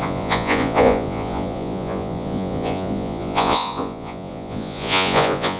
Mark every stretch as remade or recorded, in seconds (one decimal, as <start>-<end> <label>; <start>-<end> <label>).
0.0-5.6 remade